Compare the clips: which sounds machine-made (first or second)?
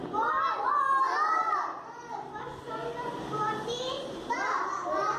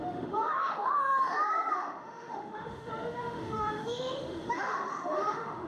second